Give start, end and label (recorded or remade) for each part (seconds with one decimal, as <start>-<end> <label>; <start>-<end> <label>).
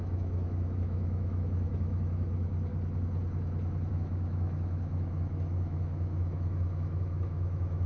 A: 0.0-2.7 remade; 2.7-3.9 recorded; 3.9-7.9 remade